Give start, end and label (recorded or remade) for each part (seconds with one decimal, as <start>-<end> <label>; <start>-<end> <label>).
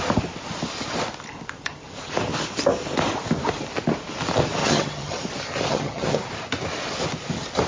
0.0-4.6 recorded; 4.6-5.2 remade; 5.2-5.7 recorded; 5.7-6.3 remade; 6.3-7.7 recorded